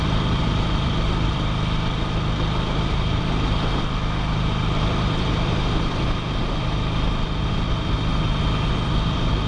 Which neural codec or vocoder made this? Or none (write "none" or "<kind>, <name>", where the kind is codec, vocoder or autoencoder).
none